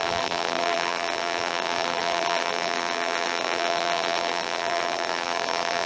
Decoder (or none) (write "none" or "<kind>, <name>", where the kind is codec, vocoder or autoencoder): vocoder, BigVGAN v2